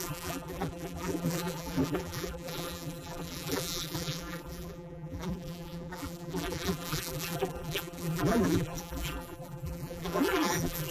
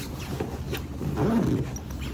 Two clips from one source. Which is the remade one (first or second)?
first